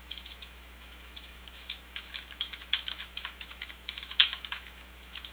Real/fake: fake